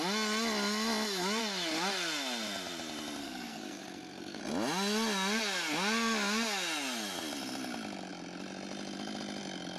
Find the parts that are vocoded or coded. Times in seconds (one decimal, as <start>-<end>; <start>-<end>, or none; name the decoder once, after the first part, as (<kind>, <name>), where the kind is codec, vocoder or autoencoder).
3.2-4.4 (codec, SNAC)